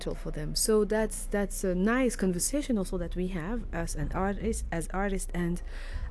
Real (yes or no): yes